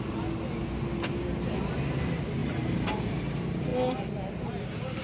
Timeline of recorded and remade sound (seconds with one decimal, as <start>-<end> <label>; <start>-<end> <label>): 0.0-2.4 recorded; 2.4-3.0 remade; 3.0-5.0 recorded